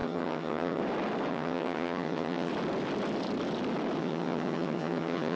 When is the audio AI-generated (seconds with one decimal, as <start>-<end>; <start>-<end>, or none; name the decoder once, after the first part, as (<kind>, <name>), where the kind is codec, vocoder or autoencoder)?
0.0-0.8 (vocoder, HiFi-GAN); 1.3-2.5; 4.0-5.4